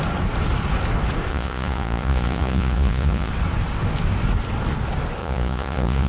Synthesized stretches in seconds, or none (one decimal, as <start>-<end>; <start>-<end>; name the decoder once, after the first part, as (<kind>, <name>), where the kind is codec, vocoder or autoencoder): 1.3-3.3 (vocoder, Vocos); 5.2-6.1